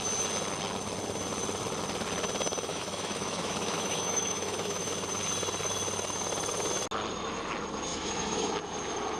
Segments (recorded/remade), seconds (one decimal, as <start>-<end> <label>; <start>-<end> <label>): 0.0-2.7 recorded; 2.7-4.9 remade; 4.9-7.9 recorded; 7.9-8.5 remade; 8.5-9.2 recorded